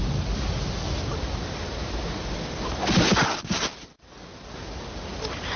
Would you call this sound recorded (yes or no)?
yes